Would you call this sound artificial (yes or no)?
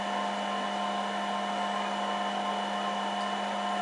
no